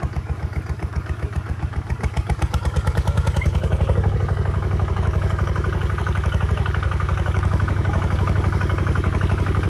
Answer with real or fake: fake